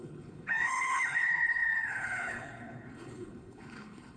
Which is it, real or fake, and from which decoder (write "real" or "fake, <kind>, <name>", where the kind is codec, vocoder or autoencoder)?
fake, codec, HILCodec